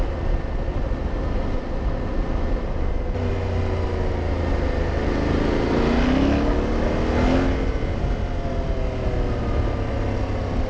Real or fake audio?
real